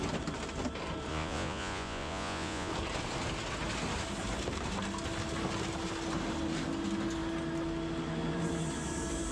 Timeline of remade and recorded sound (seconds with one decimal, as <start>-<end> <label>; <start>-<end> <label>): 0.0-1.1 recorded; 1.1-2.7 remade; 2.7-9.3 recorded